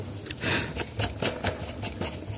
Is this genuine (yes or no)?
yes